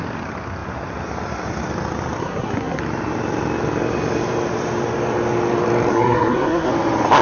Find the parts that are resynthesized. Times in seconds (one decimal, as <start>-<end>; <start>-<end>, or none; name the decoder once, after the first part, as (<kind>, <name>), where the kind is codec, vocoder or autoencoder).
2.2-2.8 (codec, SNAC); 5.9-6.7